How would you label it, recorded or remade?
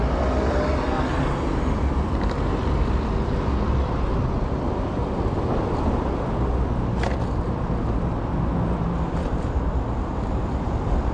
recorded